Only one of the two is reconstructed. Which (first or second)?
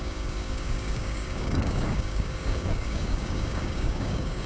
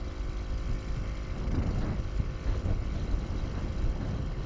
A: first